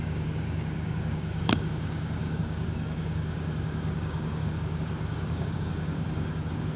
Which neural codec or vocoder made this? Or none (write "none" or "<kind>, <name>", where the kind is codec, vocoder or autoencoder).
codec, DAC